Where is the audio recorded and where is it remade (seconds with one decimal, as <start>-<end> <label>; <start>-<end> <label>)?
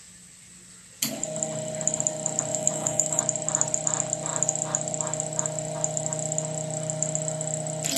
0.0-2.5 recorded; 2.5-3.2 remade; 3.2-8.0 recorded